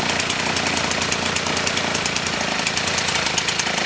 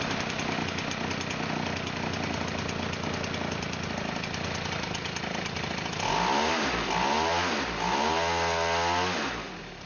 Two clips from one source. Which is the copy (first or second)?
first